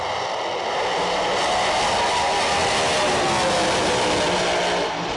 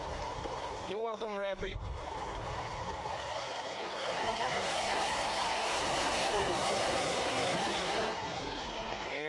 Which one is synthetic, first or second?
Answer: second